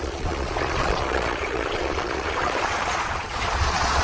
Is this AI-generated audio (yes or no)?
yes